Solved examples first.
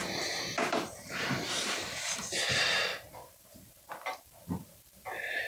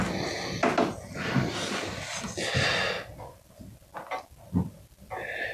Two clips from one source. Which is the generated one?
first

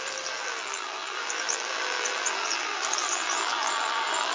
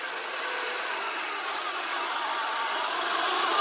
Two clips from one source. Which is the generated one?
first